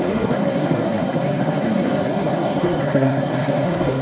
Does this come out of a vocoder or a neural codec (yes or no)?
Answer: yes